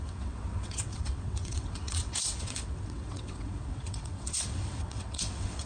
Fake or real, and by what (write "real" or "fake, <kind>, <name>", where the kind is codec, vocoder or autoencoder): fake, vocoder, WaveNeXt